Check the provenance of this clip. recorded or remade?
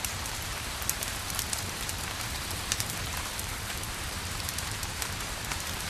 remade